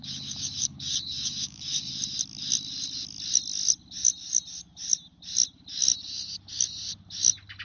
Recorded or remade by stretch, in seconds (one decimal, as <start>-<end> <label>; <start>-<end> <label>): 0.0-1.9 remade; 1.9-7.6 recorded